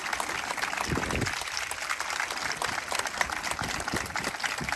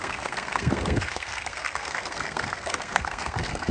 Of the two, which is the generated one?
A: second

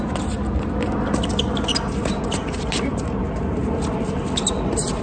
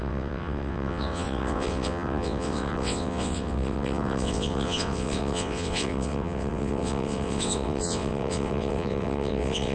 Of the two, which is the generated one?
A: second